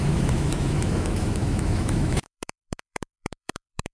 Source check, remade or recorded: remade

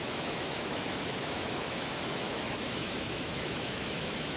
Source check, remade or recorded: remade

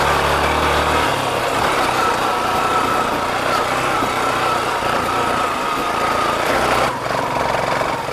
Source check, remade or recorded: recorded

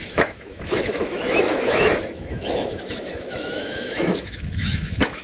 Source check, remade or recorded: remade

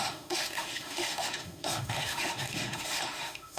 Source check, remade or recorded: remade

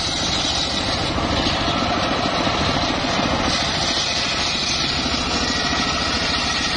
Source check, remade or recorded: recorded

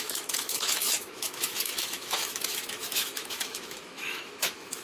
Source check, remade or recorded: remade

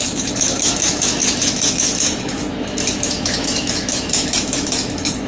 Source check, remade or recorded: remade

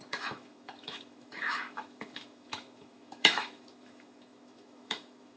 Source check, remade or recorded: remade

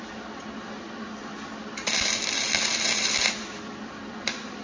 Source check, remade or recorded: recorded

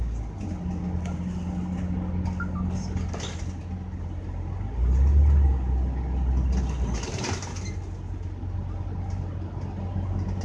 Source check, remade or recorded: recorded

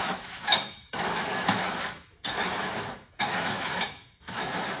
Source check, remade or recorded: remade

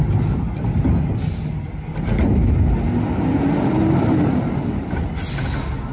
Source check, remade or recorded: recorded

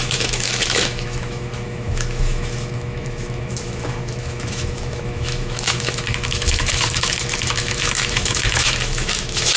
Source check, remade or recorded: remade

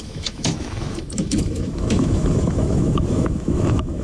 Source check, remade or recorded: remade